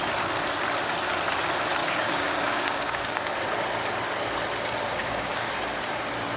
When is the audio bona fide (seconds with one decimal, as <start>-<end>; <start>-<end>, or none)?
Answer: 0.0-1.8; 3.2-5.0; 5.5-6.4